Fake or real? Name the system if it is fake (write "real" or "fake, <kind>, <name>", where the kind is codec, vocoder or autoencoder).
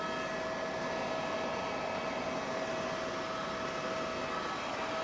real